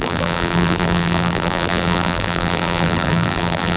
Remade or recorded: remade